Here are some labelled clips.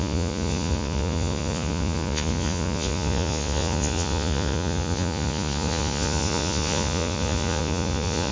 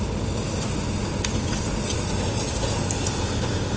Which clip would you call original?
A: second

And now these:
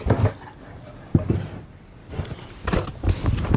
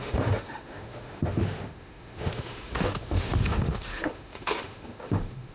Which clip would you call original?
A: first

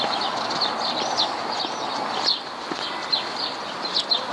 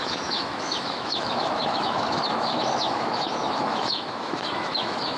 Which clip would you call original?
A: first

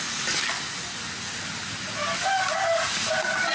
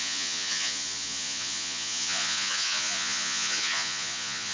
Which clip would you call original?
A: first